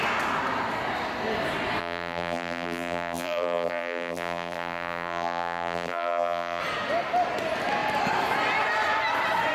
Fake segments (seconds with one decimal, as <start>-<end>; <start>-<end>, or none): 1.8-6.6